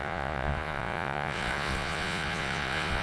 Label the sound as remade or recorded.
remade